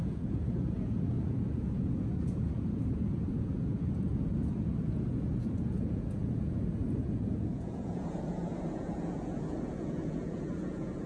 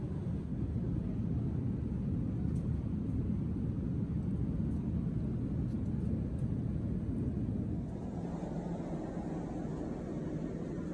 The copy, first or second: first